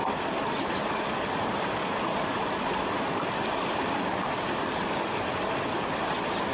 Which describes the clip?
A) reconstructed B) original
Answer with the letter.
B